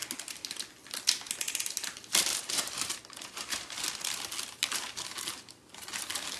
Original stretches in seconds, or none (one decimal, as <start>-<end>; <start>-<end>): 0.0-2.3; 3.8-6.4